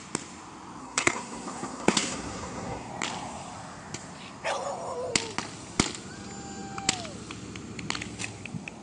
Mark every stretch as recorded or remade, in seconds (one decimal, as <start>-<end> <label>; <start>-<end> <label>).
0.0-0.8 recorded; 0.8-2.9 remade; 2.9-8.8 recorded